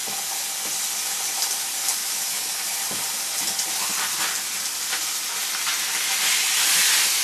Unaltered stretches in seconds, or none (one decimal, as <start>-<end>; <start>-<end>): 0.0-2.0; 2.8-7.2